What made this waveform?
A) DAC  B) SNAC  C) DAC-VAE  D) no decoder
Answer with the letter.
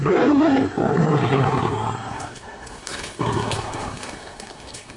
B